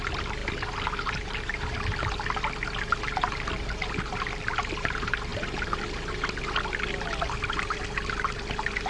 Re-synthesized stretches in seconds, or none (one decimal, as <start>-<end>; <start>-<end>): none

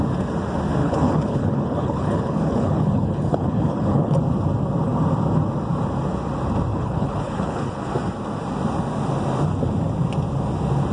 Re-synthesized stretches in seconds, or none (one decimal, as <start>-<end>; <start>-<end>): 0.8-4.2; 6.7-7.9

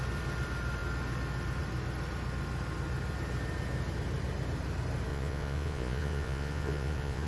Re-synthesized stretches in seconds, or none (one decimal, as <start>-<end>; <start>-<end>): 5.1-7.3

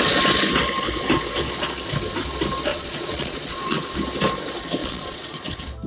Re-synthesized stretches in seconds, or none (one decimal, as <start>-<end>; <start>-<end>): 2.7-3.9; 4.8-5.4

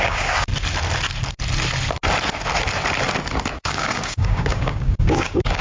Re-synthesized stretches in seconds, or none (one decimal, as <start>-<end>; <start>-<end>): 0.0-0.5; 3.5-5.6

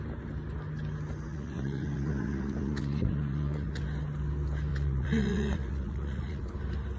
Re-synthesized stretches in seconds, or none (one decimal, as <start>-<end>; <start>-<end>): 1.3-3.8; 4.7-6.4

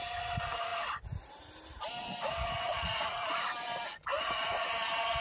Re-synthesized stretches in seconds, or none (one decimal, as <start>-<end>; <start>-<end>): 2.7-3.3; 4.1-4.7